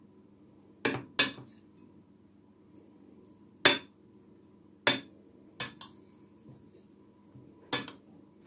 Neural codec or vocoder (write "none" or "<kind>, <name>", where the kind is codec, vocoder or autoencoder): none